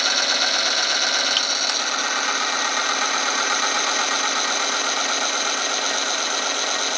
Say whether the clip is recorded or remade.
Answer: recorded